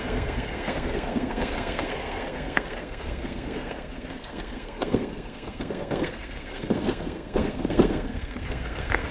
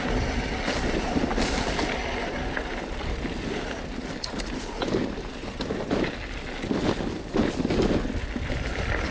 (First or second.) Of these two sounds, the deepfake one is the first